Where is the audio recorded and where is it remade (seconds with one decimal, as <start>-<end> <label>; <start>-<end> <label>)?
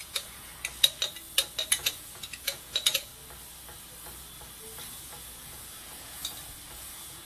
0.0-0.5 remade; 0.5-1.7 recorded; 1.7-3.1 remade; 3.1-4.9 recorded; 4.9-6.2 remade; 6.2-6.7 recorded; 6.7-7.2 remade